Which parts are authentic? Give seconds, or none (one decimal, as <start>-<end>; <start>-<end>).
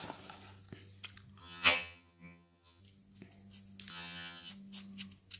0.0-1.4; 2.8-3.9; 4.5-5.4